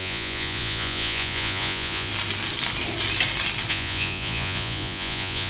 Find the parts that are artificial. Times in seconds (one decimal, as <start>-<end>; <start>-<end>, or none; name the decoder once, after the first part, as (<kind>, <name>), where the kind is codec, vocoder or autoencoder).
0.0-2.1 (vocoder, Vocos); 3.7-5.5